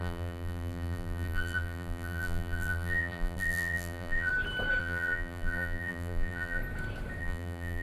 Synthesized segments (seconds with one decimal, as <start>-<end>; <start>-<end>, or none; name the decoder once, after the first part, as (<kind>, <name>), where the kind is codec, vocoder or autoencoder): 0.0-4.3 (vocoder, BigVGAN v2); 4.8-6.6; 7.2-7.8